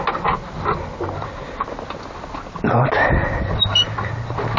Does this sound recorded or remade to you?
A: recorded